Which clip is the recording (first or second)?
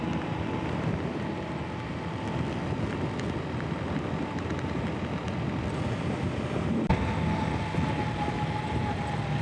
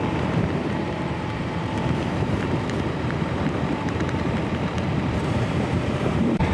first